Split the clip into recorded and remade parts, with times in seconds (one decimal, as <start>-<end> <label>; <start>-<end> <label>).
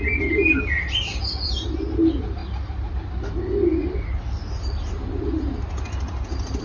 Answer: 0.0-6.6 recorded